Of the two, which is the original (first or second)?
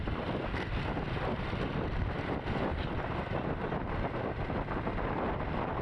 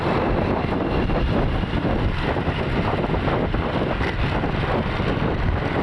second